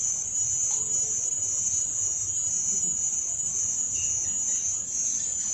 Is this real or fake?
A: real